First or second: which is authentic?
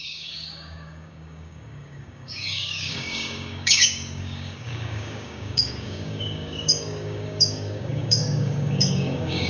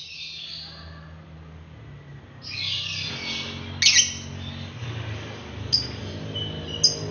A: second